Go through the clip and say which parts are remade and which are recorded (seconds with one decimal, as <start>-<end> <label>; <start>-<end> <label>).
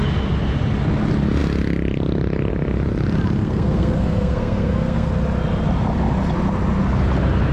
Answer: 0.0-3.4 recorded; 3.4-5.1 remade; 5.1-7.5 recorded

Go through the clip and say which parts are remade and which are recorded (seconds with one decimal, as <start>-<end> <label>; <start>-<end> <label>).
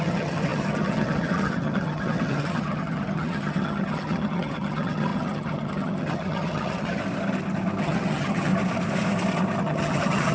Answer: 0.0-7.0 remade; 7.0-7.8 recorded; 7.8-8.5 remade; 8.5-9.6 recorded; 9.6-10.3 remade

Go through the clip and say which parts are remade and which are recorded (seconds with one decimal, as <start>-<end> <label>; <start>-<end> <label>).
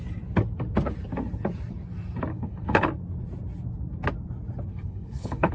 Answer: 0.0-2.3 recorded; 2.3-2.9 remade; 2.9-4.7 recorded; 4.7-5.5 remade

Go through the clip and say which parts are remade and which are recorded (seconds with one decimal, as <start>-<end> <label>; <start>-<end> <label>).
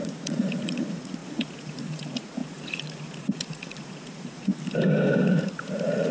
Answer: 0.0-4.5 remade; 4.5-5.6 recorded; 5.6-6.1 remade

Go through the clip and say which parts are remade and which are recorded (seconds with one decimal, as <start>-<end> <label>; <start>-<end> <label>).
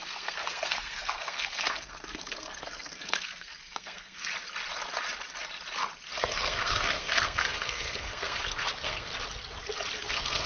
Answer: 0.0-4.3 remade; 4.3-6.2 recorded; 6.2-9.1 remade; 9.1-10.0 recorded; 10.0-10.5 remade